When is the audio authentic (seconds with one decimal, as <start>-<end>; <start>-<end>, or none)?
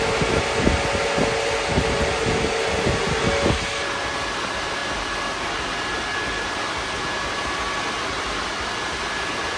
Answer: 0.0-9.6